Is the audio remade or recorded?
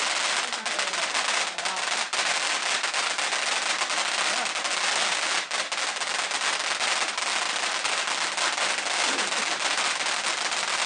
recorded